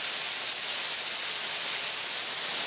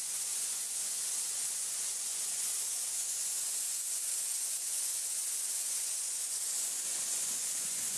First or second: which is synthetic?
second